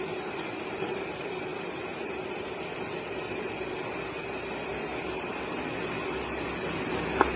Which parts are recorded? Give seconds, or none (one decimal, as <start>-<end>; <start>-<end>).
none